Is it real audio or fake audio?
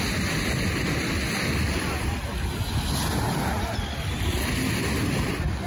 real